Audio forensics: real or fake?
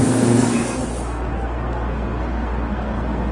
fake